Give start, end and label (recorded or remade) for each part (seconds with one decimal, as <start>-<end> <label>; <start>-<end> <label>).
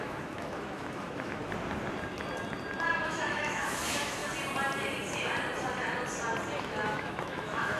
0.0-1.4 remade; 1.4-3.0 recorded; 3.0-4.2 remade; 4.2-6.6 recorded; 6.6-7.8 remade